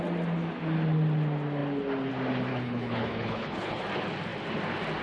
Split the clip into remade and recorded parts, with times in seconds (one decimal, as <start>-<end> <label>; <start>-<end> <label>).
0.0-2.5 recorded; 2.5-3.8 remade; 3.8-5.0 recorded